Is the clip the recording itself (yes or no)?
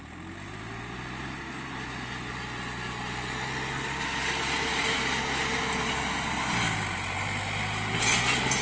yes